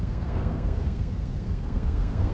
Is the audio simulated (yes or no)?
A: yes